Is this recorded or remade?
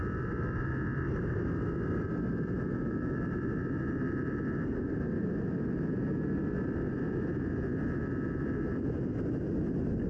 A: recorded